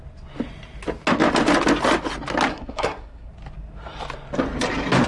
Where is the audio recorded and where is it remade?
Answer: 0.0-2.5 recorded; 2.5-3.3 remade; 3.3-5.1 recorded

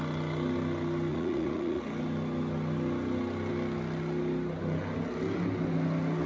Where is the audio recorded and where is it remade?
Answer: 0.0-1.1 recorded; 1.1-1.8 remade; 1.8-6.3 recorded